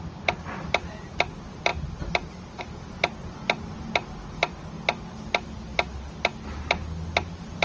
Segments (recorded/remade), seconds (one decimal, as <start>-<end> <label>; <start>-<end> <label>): 0.0-7.6 recorded